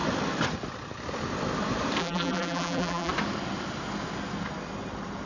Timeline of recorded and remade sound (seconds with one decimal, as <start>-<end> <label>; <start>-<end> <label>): 0.0-2.0 recorded; 2.0-3.1 remade; 3.1-5.3 recorded